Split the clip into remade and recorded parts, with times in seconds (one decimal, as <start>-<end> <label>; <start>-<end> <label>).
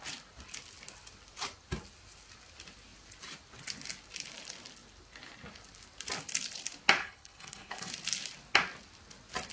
0.0-7.0 recorded; 7.0-7.9 remade; 7.9-9.5 recorded